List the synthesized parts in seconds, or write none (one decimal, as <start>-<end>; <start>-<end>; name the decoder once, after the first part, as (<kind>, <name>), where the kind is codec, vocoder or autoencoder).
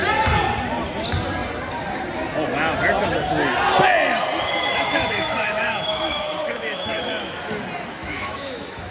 4.7-7.4 (autoencoder, DAC-VAE); 8.0-8.9